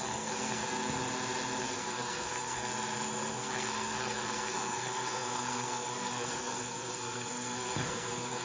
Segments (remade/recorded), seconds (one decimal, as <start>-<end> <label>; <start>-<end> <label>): 0.0-0.6 remade; 0.6-1.6 recorded; 1.6-2.7 remade; 2.7-3.3 recorded; 3.3-8.4 remade